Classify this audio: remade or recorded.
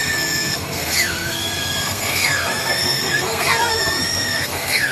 remade